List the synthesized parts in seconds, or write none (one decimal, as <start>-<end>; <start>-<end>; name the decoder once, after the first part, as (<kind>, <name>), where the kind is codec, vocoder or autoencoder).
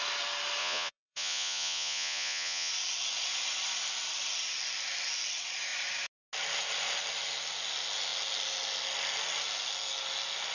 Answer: 0.6-2.7 (vocoder, Vocos)